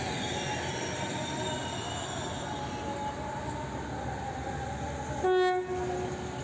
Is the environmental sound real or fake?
real